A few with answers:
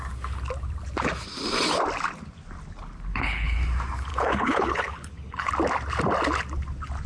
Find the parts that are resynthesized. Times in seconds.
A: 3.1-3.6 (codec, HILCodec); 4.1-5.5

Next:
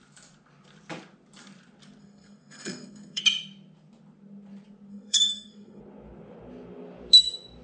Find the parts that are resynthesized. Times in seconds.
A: 2.0-3.2 (codec, SNAC); 4.9-5.8

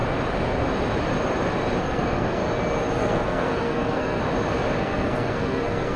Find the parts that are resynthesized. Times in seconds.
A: 1.8-2.4 (codec, SNAC); 3.0-4.2; 4.8-6.0

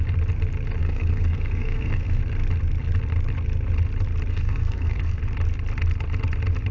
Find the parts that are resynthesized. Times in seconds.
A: 0.8-2.2 (codec, SNAC); 4.3-5.2

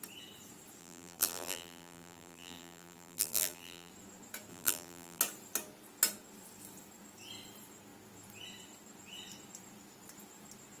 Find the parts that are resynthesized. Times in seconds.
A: 0.8-3.9 (vocoder, BigVGAN v2); 4.5-5.2

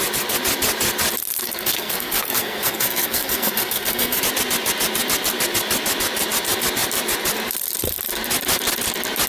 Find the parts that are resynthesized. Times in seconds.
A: 1.3-4.2 (codec, SNAC)

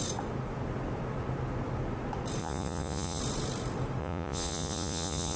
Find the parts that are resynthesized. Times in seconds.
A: 2.4-3.2 (vocoder, Vocos); 4.0-5.4

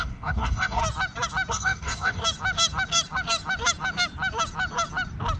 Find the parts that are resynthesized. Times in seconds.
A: 0.0-0.8 (codec, DAC); 1.5-2.2